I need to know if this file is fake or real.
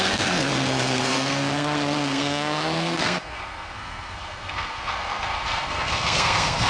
fake